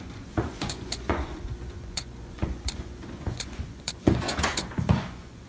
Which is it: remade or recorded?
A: remade